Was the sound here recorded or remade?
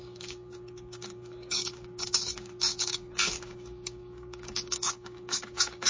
remade